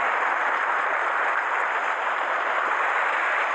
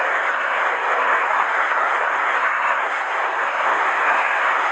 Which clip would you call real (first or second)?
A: first